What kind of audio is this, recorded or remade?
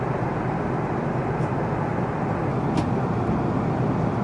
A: recorded